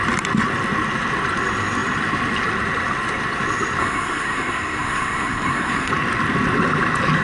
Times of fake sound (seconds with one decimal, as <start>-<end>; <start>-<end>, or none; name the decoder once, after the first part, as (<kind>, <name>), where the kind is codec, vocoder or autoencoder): 3.8-5.9 (codec, SNAC)